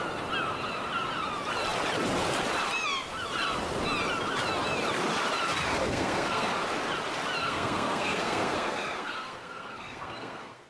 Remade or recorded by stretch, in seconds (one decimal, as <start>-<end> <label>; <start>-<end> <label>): 0.0-5.8 recorded; 5.8-6.5 remade; 6.5-7.4 recorded; 7.4-10.7 remade